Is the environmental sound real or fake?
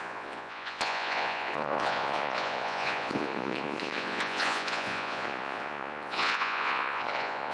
fake